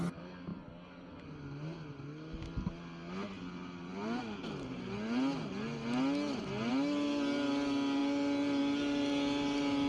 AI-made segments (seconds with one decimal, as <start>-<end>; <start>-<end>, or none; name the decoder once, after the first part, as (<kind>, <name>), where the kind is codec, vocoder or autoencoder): none